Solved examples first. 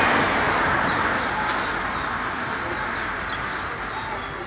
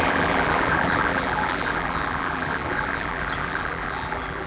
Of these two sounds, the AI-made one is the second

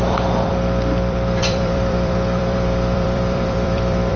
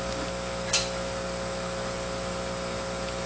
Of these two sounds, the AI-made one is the first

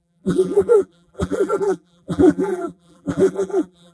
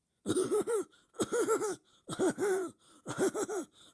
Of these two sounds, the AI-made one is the first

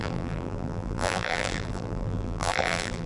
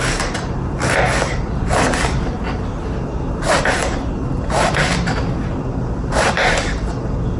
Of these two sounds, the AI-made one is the first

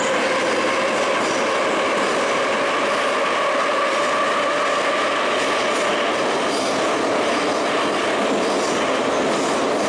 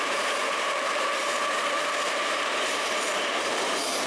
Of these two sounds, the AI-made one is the second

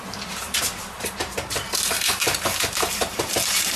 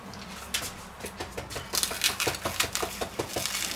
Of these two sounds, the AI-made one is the first